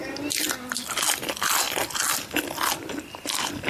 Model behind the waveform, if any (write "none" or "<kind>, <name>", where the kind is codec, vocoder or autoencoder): none